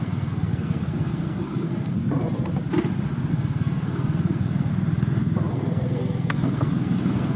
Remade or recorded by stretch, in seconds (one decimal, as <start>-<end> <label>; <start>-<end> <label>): 0.0-2.0 remade; 2.0-3.3 recorded; 3.3-4.7 remade; 4.7-5.5 recorded; 5.5-7.4 remade